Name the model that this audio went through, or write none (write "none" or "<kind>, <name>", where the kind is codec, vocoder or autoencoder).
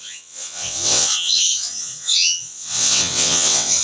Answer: vocoder, WaveNeXt